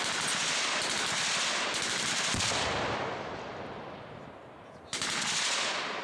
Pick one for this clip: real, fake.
real